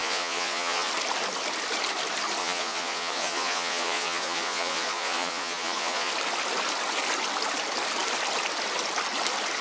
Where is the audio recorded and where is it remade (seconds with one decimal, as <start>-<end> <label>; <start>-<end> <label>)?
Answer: 0.0-0.9 remade; 0.9-2.4 recorded; 2.4-6.1 remade; 6.1-9.6 recorded